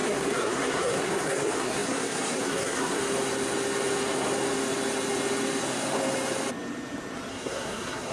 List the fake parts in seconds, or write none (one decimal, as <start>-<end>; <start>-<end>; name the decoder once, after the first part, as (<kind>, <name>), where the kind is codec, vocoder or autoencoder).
0.0-3.0 (codec, SNAC); 7.3-8.1